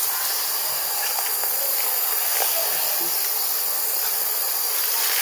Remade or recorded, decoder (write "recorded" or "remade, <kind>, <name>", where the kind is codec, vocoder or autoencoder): recorded